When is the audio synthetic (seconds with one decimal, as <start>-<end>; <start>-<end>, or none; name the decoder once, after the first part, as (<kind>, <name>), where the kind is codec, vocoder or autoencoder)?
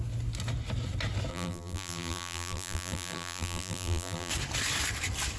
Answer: 1.3-4.3 (vocoder, BigVGAN v2)